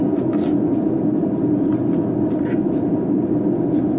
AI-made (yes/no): no